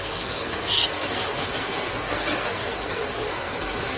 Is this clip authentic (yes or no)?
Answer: no